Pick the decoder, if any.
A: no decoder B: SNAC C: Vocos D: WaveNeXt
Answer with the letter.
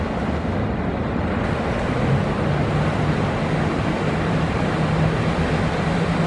A